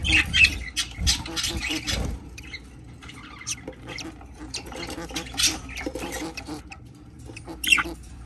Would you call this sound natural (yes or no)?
no